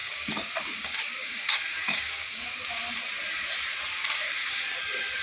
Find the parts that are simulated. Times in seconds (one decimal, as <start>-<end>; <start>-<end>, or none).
0.0-2.9; 4.0-5.2